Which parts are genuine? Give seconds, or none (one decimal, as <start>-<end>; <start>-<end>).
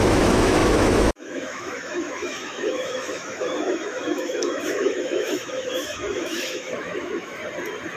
7.4-8.0